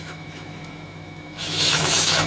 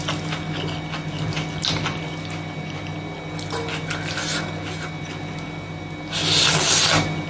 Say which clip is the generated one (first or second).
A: first